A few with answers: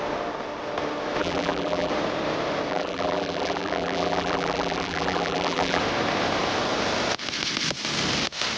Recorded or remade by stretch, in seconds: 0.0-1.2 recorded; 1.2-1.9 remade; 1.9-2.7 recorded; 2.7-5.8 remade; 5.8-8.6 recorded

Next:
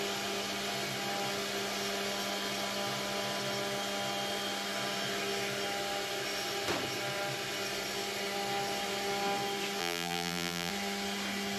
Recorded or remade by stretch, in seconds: 0.0-9.8 recorded; 9.8-10.7 remade; 10.7-11.6 recorded